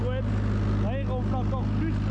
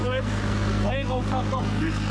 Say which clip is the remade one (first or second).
second